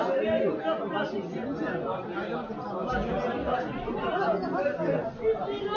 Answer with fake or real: real